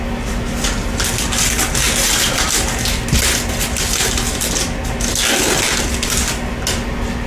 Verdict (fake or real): real